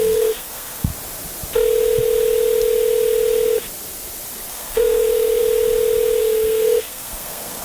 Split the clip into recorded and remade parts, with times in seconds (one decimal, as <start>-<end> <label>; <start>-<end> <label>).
0.0-0.9 remade; 0.9-4.5 recorded; 4.5-5.4 remade; 5.4-6.2 recorded; 6.2-7.6 remade